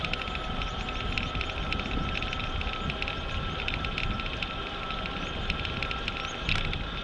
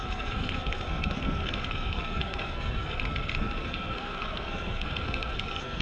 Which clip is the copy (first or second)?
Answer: second